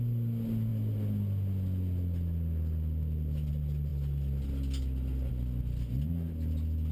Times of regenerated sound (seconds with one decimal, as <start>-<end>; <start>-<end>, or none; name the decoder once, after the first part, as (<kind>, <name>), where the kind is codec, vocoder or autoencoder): none